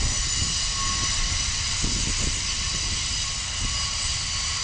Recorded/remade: recorded